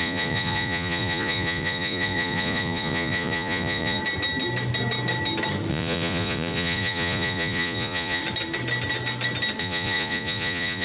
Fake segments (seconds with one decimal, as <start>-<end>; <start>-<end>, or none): 0.0-4.0; 5.7-8.2; 9.6-10.8